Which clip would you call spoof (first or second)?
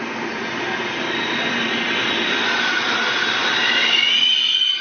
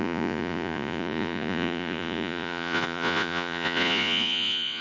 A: second